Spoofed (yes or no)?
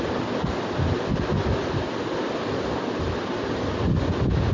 no